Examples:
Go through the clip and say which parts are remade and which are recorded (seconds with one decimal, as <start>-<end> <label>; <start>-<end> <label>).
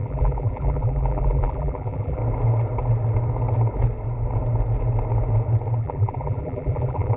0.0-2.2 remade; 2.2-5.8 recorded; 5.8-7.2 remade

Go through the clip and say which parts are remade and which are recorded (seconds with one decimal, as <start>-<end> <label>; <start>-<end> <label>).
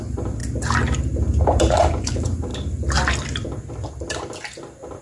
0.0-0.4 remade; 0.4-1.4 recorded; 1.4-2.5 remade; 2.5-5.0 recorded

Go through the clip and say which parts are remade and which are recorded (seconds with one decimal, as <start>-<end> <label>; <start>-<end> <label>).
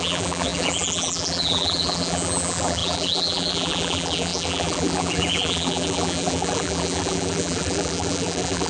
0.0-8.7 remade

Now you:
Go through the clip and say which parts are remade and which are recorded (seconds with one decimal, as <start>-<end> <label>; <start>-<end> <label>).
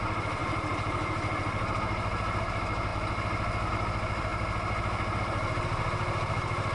0.0-2.9 remade; 2.9-3.7 recorded; 3.7-4.3 remade; 4.3-5.2 recorded; 5.2-6.7 remade